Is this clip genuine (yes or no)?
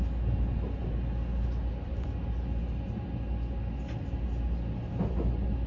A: yes